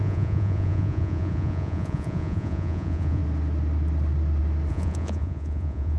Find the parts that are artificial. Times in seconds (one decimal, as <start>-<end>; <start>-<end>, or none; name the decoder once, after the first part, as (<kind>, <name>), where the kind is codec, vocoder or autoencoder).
0.0-3.2 (vocoder, Vocos); 4.7-6.0